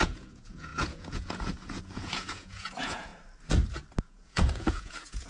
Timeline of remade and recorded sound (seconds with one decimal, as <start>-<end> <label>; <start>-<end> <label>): 0.0-3.1 remade; 3.1-4.0 recorded; 4.0-5.3 remade